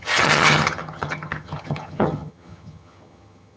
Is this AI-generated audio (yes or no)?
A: yes